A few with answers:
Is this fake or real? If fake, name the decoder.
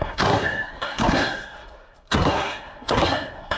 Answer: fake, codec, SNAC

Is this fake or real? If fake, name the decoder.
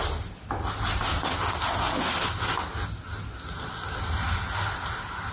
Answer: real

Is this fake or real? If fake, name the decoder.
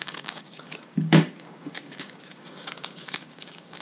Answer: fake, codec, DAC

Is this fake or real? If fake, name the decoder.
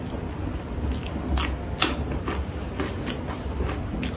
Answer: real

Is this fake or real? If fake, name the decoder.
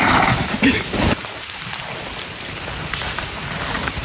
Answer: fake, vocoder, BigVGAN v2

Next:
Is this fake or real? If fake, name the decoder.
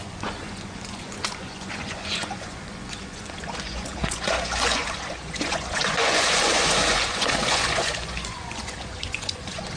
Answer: fake, vocoder, Vocos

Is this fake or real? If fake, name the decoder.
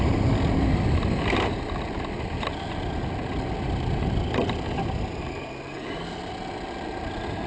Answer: real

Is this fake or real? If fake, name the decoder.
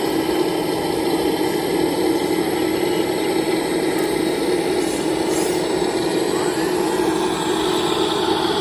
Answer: real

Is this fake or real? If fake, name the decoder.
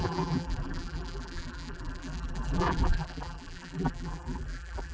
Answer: fake, vocoder, BigVGAN v2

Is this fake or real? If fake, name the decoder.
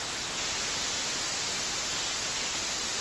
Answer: real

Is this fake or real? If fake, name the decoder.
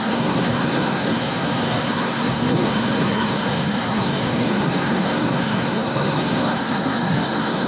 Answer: fake, codec, SNAC